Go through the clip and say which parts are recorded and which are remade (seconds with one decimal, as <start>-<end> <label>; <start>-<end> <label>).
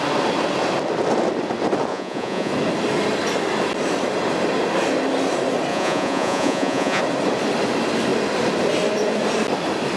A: 0.0-1.9 recorded; 1.9-2.5 remade; 2.5-5.7 recorded; 5.7-7.0 remade; 7.0-10.0 recorded